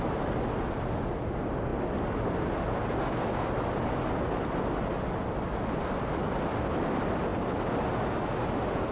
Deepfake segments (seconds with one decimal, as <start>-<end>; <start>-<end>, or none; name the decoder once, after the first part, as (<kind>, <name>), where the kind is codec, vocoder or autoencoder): none